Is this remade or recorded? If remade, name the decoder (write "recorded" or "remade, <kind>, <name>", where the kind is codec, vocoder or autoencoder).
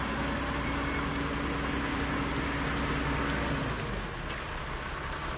recorded